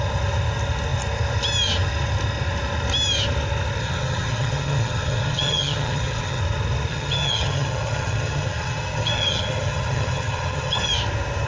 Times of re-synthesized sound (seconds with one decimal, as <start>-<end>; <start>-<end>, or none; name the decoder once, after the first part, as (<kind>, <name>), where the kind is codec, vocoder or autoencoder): 3.8-6.4 (vocoder, HiFi-GAN); 6.9-10.9